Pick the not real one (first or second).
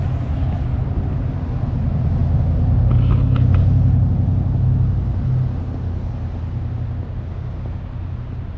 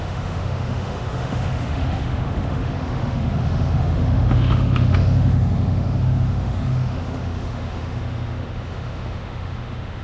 second